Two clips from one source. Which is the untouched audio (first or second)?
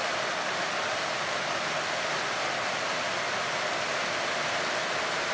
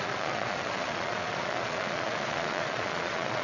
first